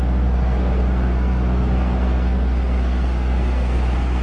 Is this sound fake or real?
fake